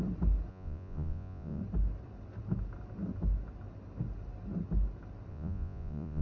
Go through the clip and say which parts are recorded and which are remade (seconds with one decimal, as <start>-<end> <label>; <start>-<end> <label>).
0.0-0.5 recorded; 0.5-1.6 remade; 1.6-5.3 recorded; 5.3-6.2 remade

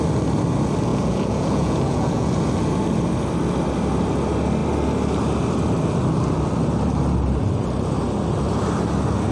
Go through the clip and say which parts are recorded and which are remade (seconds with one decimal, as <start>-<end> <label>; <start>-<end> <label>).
0.0-0.9 recorded; 0.9-2.3 remade; 2.3-9.3 recorded